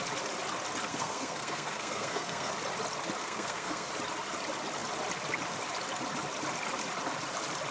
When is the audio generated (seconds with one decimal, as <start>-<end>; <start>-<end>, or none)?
0.9-2.5; 3.2-3.9